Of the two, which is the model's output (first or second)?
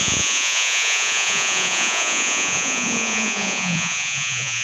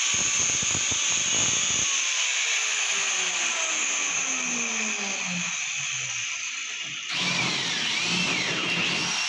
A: first